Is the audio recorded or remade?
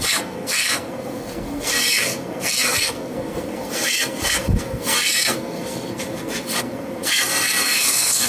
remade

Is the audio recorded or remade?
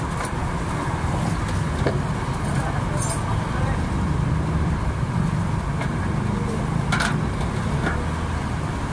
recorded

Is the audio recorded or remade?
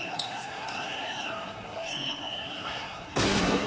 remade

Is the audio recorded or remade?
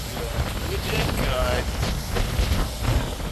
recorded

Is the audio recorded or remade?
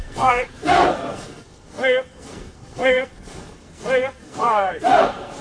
remade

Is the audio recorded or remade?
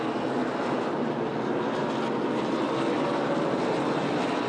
recorded